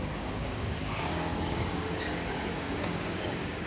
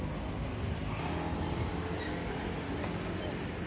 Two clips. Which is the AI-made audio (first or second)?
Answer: first